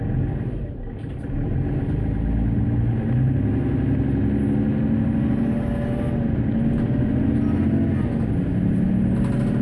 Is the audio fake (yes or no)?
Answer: no